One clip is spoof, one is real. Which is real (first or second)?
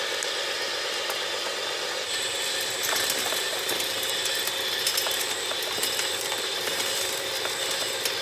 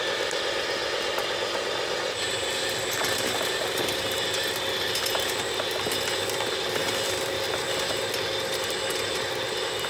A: second